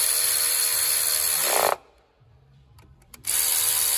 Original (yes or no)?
no